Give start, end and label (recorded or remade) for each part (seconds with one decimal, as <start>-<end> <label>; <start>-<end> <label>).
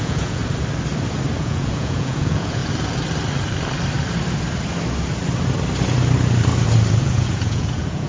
0.0-0.4 remade; 0.4-1.4 recorded; 1.4-2.6 remade; 2.6-7.0 recorded; 7.0-8.1 remade